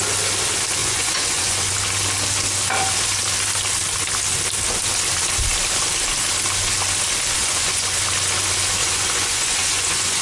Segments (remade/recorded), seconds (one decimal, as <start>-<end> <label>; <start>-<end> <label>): 0.0-0.8 recorded; 0.8-1.7 remade; 1.7-7.4 recorded; 7.4-8.0 remade; 8.0-8.8 recorded; 8.8-10.2 remade